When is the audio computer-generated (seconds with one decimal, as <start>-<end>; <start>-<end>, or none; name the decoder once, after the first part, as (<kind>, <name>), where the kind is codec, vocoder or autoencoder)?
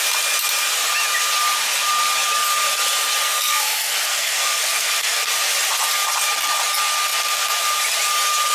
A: 3.2-5.3 (codec, SNAC)